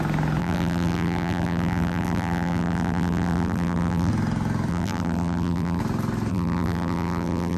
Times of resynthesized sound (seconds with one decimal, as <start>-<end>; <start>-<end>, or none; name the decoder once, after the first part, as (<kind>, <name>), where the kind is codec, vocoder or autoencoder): 0.4-4.1 (vocoder, BigVGAN v2); 4.7-5.8; 6.3-7.6